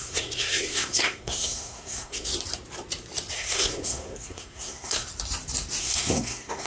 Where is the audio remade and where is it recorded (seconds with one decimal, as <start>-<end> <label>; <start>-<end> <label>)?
0.0-2.3 remade; 2.3-3.3 recorded; 3.3-5.1 remade; 5.1-5.8 recorded; 5.8-6.7 remade